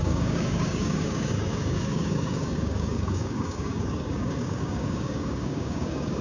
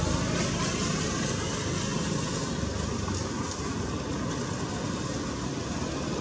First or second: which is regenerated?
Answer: first